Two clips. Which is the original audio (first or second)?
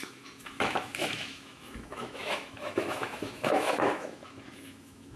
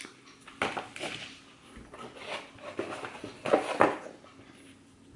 second